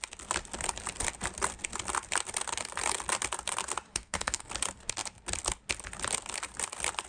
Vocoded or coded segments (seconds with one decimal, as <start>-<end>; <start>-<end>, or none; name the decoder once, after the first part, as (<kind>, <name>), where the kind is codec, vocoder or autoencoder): 3.9-4.5 (codec, SNAC)